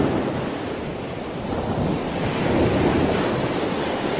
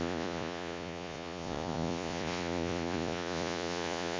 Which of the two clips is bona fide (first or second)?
first